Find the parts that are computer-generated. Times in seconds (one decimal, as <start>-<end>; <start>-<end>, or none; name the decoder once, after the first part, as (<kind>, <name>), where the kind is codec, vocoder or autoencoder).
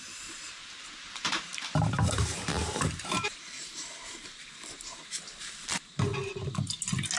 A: 0.0-6.1 (vocoder, BigVGAN v2)